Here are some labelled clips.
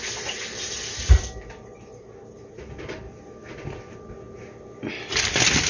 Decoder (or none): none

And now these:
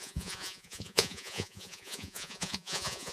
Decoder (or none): vocoder, Vocos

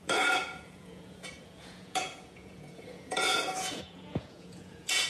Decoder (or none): vocoder, Vocos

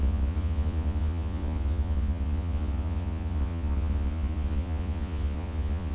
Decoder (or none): vocoder, Vocos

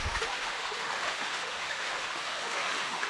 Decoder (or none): autoencoder, DAC-VAE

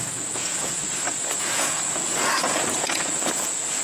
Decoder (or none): vocoder, Vocos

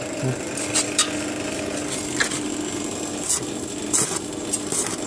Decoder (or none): none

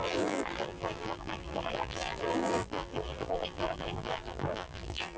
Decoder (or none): vocoder, BigVGAN v2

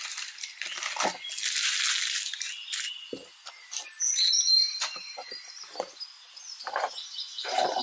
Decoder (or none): none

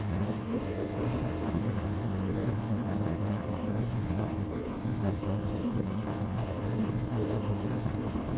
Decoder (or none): codec, SNAC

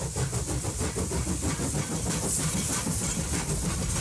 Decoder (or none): none